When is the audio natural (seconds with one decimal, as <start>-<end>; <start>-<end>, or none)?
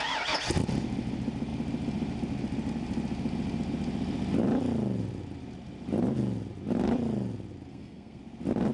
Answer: 0.0-7.7; 8.2-8.7